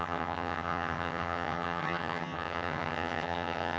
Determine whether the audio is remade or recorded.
remade